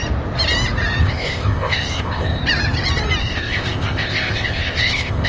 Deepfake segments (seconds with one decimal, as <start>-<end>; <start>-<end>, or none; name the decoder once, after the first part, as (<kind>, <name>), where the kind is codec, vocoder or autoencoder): 1.0-2.4 (codec, ZipCodec); 3.2-5.3